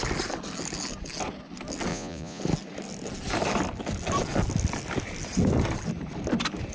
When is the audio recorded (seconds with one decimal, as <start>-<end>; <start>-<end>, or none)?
0.0-1.9; 2.4-6.7